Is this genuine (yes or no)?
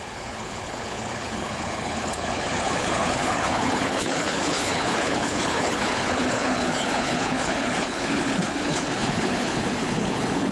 no